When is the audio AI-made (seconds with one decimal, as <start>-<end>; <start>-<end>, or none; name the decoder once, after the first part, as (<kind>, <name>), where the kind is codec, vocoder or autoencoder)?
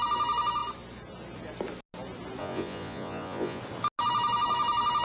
2.4-3.6 (vocoder, Vocos)